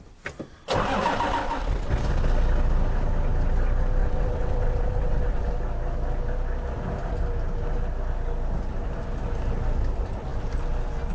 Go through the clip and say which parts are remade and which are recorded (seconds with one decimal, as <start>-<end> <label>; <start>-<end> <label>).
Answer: 0.0-1.4 recorded; 1.4-1.9 remade; 1.9-4.0 recorded; 4.0-5.6 remade; 5.6-11.1 recorded